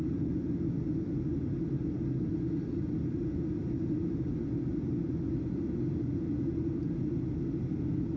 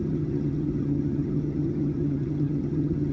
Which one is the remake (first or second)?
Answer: second